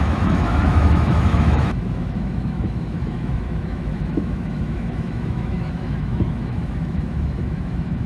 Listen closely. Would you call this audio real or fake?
fake